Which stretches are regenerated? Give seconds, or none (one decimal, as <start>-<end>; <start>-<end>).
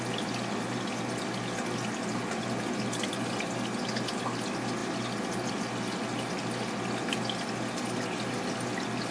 none